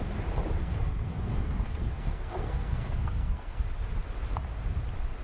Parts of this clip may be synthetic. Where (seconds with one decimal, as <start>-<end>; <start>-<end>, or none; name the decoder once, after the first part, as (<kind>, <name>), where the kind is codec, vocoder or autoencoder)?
0.6-3.6 (codec, SNAC)